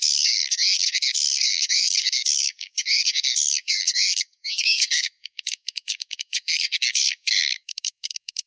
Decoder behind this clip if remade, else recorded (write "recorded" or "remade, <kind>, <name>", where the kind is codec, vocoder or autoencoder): remade, codec, SNAC